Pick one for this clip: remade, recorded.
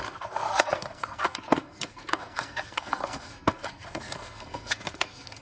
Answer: remade